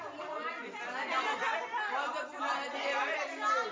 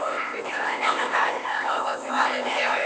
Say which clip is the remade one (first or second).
second